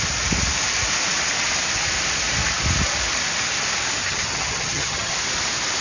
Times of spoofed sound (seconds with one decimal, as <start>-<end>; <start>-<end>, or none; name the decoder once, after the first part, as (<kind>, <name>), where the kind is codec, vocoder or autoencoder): 4.0-5.1 (vocoder, HiFi-GAN)

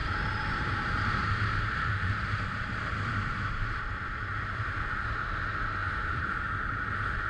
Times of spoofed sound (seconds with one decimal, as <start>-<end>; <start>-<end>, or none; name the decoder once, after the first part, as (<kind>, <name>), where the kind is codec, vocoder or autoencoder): 0.0-3.8 (vocoder, BigVGAN v2); 5.8-6.5

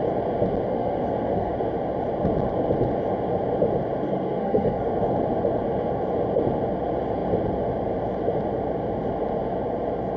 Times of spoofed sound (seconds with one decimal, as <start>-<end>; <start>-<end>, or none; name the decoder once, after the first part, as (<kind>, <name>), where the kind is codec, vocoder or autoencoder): 0.7-1.5 (codec, SNAC); 4.0-4.9

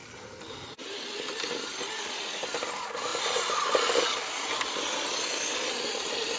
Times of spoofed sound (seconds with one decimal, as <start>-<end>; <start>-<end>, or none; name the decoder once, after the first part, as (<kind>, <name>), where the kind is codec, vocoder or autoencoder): none

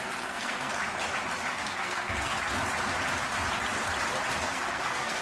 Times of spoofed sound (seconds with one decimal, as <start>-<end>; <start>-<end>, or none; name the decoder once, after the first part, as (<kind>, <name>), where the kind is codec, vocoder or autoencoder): 0.0-0.8 (codec, SNAC); 1.5-2.3; 4.5-5.2

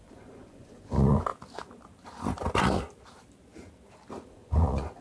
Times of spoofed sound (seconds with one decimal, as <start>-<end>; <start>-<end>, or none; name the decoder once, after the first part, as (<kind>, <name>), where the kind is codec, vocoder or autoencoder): 0.0-1.3 (vocoder, Vocos); 4.3-5.0